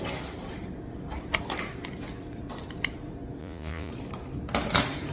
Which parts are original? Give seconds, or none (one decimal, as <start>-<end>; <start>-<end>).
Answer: 0.0-3.4; 3.9-5.1